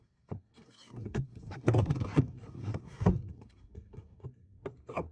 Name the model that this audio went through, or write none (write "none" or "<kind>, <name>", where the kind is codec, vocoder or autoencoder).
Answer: codec, SNAC